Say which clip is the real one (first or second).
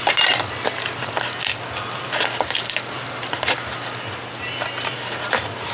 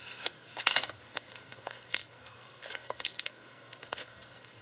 first